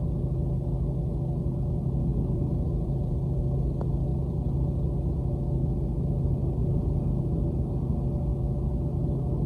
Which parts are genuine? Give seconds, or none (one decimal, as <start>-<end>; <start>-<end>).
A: 0.0-2.1; 3.4-6.6; 7.2-9.5